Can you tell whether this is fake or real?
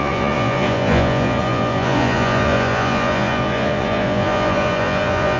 fake